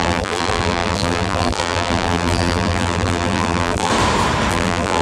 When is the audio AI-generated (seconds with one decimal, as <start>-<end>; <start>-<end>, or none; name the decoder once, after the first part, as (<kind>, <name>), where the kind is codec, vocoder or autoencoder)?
0.0-3.9 (vocoder, BigVGAN v2); 4.5-5.0